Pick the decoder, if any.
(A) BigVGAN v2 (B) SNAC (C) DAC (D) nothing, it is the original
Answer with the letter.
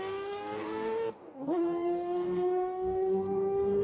C